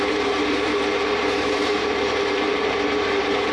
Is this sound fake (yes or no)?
yes